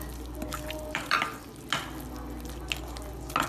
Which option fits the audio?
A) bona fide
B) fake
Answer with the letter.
A